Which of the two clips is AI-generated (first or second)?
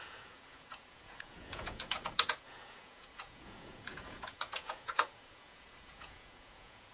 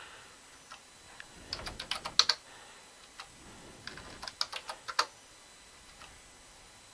first